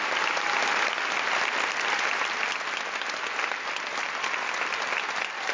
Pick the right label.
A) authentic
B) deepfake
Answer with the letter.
A